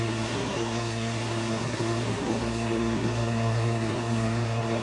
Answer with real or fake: fake